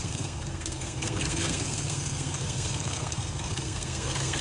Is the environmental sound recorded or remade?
remade